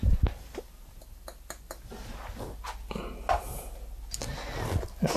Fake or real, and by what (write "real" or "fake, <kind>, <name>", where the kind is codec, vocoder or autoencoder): real